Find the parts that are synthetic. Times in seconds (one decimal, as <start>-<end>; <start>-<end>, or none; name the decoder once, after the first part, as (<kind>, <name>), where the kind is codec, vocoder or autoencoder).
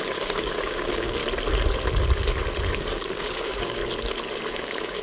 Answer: 0.0-1.2 (codec, DAC); 2.7-3.8; 4.5-5.0